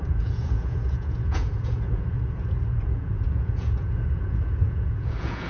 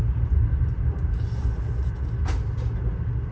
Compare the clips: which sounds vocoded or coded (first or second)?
first